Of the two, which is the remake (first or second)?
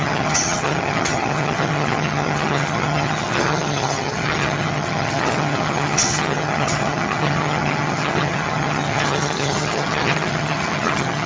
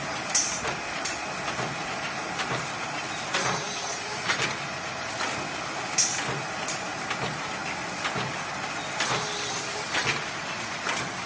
first